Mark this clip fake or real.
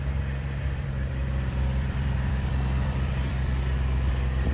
fake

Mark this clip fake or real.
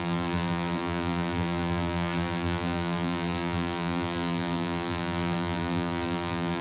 fake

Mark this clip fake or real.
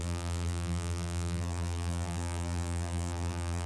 fake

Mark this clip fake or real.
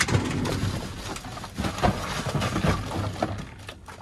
real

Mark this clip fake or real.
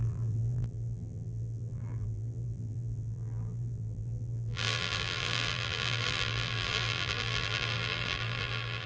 fake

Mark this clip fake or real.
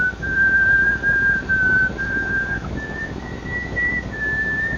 fake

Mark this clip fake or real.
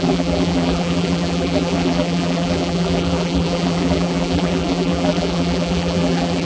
fake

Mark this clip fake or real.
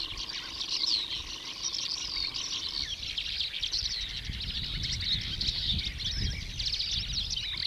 real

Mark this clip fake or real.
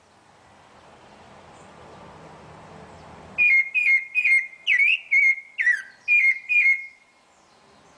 real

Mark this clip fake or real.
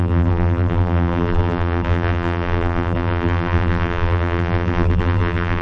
fake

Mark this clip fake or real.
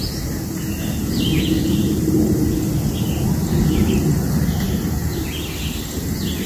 real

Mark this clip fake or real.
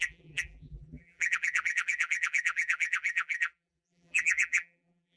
fake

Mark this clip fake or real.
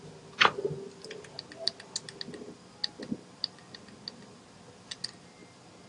real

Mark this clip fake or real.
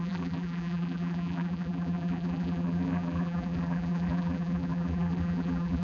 fake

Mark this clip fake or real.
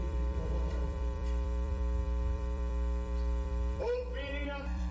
fake